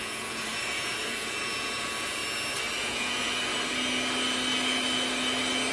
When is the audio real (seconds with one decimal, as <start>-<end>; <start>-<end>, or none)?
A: 2.2-2.8; 3.5-5.7